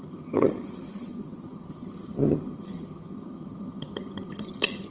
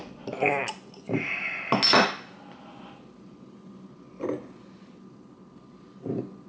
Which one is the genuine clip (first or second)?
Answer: second